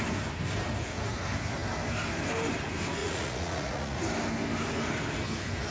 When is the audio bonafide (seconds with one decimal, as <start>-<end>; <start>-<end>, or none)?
0.0-3.0; 4.0-5.7